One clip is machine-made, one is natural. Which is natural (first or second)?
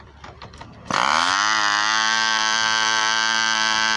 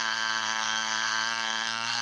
first